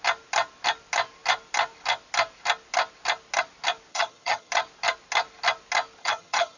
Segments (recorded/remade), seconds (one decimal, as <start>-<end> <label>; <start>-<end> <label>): 0.0-3.9 recorded; 3.9-4.5 remade; 4.5-6.0 recorded; 6.0-6.6 remade